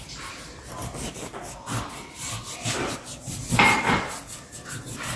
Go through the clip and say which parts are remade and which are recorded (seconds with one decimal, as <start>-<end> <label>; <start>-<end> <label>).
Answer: 0.0-5.2 recorded